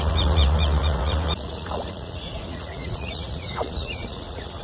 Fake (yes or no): yes